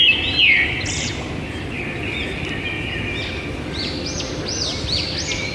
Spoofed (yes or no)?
no